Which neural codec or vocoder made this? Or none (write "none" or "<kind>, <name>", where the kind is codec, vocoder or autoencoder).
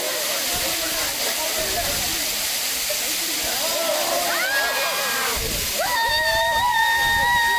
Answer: none